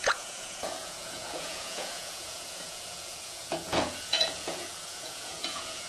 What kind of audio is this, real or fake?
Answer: fake